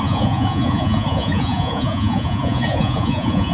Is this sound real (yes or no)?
no